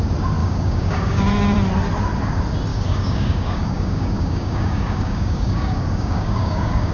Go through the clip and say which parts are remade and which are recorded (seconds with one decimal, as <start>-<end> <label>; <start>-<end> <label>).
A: 0.0-0.4 recorded; 0.4-1.3 remade; 1.3-2.7 recorded; 2.7-6.9 remade